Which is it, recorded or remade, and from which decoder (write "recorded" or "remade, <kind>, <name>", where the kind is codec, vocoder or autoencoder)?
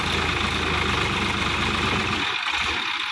recorded